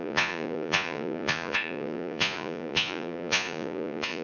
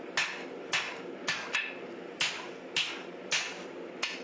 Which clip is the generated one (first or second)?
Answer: first